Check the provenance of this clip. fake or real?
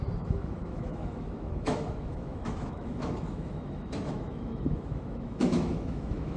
fake